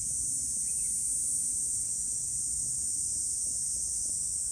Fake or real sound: real